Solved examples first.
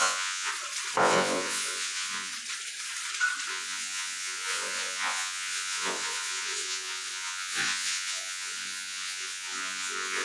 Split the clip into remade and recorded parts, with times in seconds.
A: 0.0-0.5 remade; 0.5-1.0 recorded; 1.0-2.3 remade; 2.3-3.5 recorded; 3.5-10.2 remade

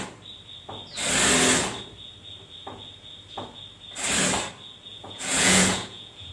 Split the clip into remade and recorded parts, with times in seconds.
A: 0.0-4.9 recorded; 4.9-6.3 remade

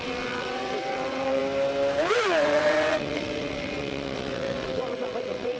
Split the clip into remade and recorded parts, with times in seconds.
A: 0.0-1.4 remade; 1.4-2.1 recorded; 2.1-5.6 remade

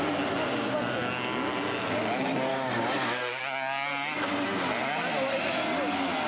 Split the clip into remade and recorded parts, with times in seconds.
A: 0.0-2.5 recorded; 2.5-3.4 remade; 3.4-6.3 recorded

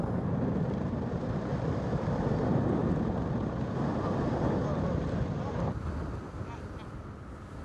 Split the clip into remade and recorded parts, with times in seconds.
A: 0.0-7.6 recorded

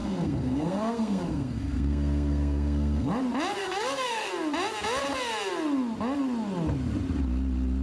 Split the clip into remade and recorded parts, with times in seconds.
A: 0.0-3.1 remade; 3.1-3.6 recorded; 3.6-4.3 remade; 4.3-7.8 recorded

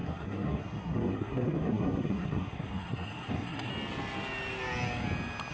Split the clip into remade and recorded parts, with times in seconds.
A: 0.0-3.7 remade; 3.7-5.5 recorded